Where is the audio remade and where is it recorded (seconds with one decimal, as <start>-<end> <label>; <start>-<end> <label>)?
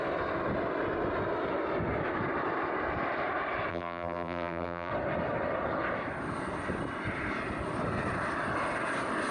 0.0-3.7 recorded; 3.7-4.9 remade; 4.9-9.3 recorded